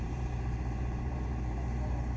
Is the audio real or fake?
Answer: fake